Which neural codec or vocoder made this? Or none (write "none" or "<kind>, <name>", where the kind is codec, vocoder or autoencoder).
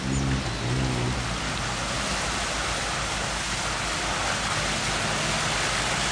none